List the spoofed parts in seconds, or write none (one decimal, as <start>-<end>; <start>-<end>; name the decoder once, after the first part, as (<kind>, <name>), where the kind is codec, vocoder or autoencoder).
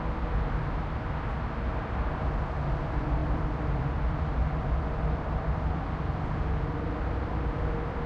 1.7-2.3 (vocoder, BigVGAN v2); 3.2-7.6